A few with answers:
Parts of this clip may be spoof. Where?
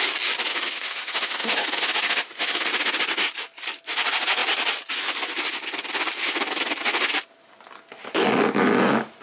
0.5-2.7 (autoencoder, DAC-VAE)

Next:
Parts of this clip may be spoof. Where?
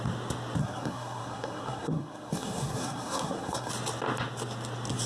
0.6-3.7 (codec, SNAC)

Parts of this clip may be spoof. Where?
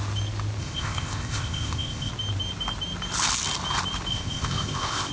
0.6-2.1 (codec, ZipCodec); 4.1-5.1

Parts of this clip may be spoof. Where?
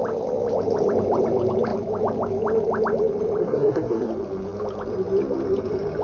3.4-4.1 (codec, SNAC)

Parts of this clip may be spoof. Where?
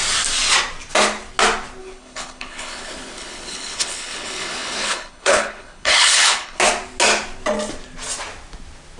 1.8-6.6 (codec, HILCodec)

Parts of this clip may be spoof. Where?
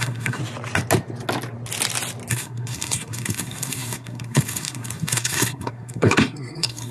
0.0-0.4 (codec, SNAC); 2.3-6.9